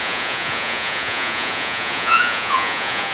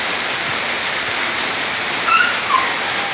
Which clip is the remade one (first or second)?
first